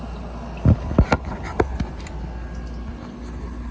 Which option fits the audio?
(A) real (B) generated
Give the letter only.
A